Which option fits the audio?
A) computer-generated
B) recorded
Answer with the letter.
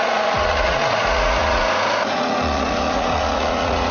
A